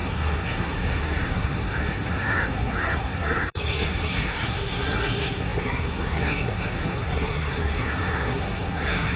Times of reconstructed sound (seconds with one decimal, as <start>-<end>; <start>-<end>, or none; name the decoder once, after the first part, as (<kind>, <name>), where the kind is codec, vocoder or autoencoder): 0.0-9.2 (codec, SNAC)